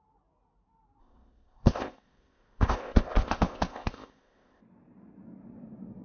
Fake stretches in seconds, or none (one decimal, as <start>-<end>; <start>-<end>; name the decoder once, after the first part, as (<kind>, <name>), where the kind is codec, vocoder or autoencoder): 1.0-4.6 (codec, ZipCodec)